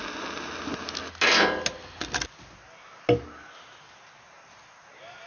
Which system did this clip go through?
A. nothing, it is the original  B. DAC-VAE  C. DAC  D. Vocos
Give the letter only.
A